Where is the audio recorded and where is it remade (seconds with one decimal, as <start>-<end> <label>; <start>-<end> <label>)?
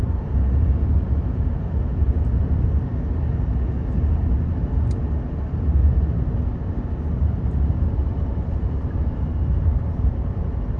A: 0.0-2.9 remade; 2.9-7.2 recorded; 7.2-10.8 remade